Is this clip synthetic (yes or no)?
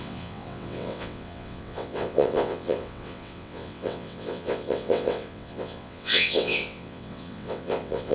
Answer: yes